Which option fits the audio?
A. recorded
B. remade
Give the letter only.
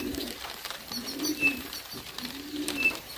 B